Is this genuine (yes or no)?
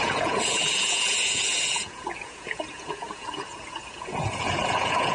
no